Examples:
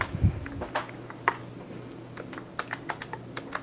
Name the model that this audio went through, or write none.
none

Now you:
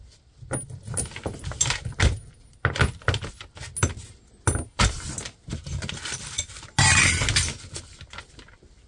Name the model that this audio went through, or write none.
none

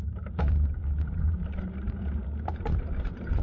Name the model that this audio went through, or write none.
vocoder, BigVGAN v2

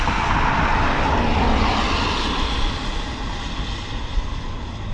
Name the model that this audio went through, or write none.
none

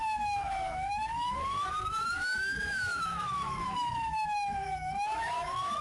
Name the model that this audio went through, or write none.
autoencoder, DAC-VAE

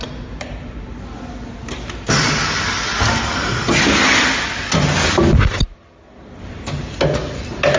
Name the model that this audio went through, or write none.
none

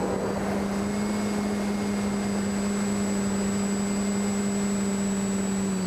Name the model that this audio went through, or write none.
none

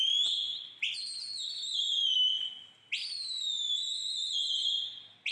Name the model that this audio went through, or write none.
none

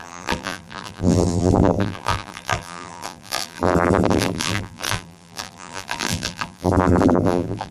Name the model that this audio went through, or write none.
vocoder, BigVGAN v2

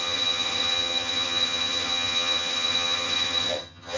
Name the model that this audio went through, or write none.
vocoder, HiFi-GAN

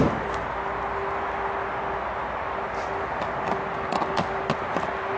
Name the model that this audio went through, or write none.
none